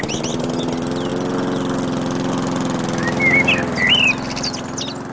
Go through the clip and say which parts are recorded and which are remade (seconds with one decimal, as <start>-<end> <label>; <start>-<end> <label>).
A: 0.0-5.1 recorded